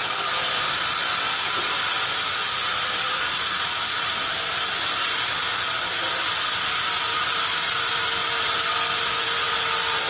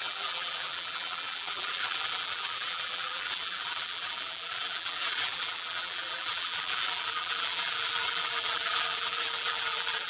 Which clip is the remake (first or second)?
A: second